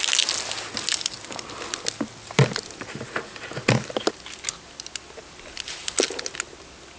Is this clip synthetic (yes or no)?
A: no